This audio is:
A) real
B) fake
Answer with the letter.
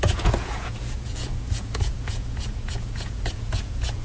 B